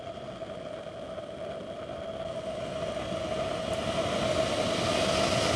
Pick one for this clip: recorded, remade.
recorded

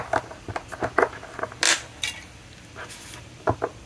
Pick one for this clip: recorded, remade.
recorded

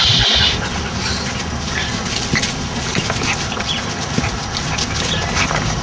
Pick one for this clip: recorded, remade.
recorded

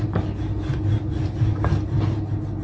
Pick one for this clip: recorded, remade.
recorded